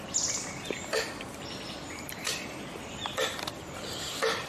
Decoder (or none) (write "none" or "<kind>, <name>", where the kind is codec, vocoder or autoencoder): vocoder, BigVGAN v2